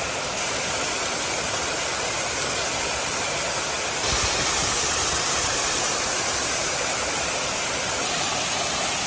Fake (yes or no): no